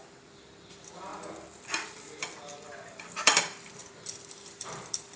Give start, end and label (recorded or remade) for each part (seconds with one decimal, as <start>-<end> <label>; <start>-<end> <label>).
0.0-1.1 remade; 1.1-2.2 recorded; 2.2-5.2 remade